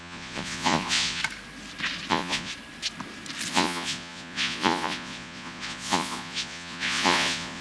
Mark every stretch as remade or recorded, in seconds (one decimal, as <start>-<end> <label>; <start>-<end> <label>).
0.0-1.2 remade; 1.2-2.1 recorded; 2.1-2.5 remade; 2.5-3.5 recorded; 3.5-7.6 remade